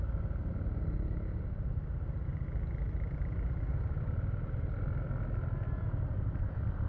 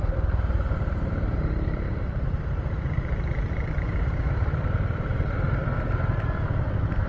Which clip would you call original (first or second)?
first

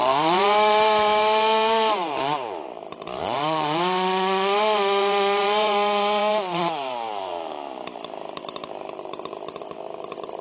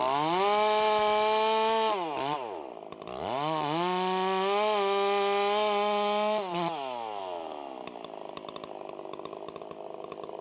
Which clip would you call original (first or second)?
second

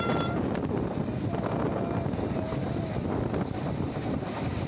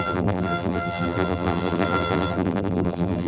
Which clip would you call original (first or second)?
first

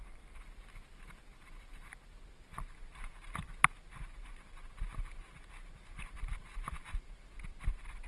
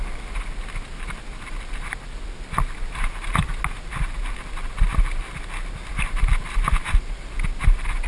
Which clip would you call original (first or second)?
second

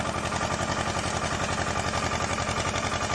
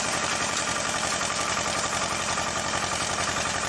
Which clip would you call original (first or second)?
first